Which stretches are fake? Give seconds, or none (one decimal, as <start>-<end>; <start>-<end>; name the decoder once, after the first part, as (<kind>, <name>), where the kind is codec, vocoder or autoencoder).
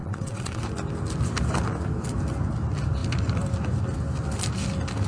0.0-0.6 (vocoder, WaveNeXt)